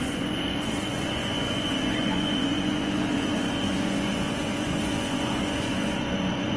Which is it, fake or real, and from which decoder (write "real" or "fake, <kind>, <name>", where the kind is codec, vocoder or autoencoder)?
fake, vocoder, Vocos